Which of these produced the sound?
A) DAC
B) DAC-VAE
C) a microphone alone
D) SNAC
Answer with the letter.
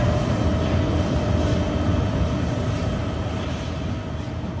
C